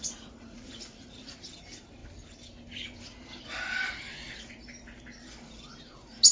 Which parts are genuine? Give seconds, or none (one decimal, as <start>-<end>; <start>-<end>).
1.4-6.3